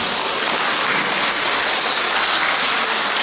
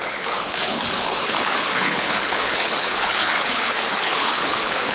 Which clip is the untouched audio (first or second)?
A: first